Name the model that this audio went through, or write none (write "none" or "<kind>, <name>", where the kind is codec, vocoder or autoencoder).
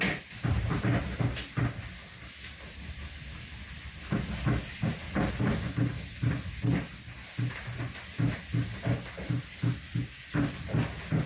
none